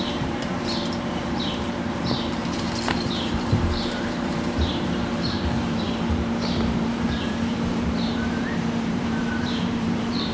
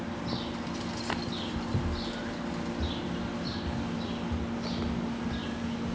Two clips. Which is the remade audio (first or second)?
first